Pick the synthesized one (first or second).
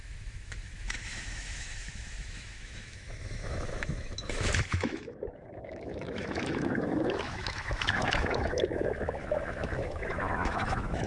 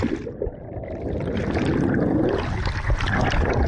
first